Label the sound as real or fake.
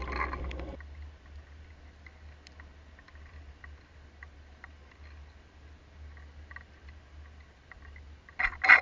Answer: real